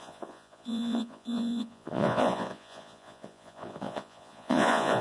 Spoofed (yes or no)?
yes